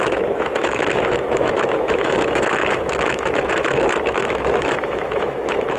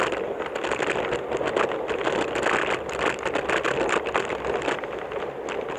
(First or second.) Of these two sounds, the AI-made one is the first